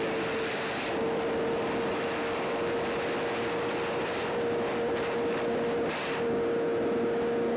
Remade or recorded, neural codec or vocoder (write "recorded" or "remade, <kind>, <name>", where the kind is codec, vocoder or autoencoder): recorded